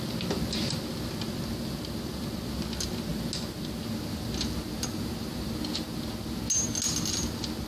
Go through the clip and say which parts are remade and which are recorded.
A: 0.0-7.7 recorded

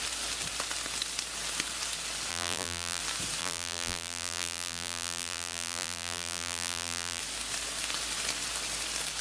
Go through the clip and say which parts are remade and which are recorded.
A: 0.0-2.3 recorded; 2.3-3.0 remade; 3.0-3.4 recorded; 3.4-7.2 remade; 7.2-9.2 recorded

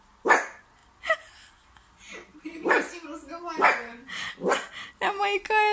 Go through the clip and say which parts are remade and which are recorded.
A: 0.0-5.7 recorded

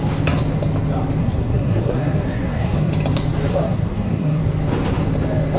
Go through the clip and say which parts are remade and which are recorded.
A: 0.0-1.2 recorded; 1.2-2.9 remade; 2.9-3.5 recorded; 3.5-4.4 remade; 4.4-5.6 recorded